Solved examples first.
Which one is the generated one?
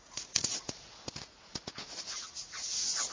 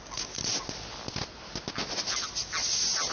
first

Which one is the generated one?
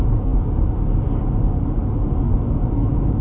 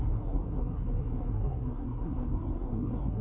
second